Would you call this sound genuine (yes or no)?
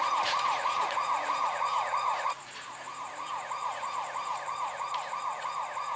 no